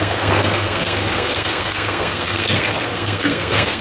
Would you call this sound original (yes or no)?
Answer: no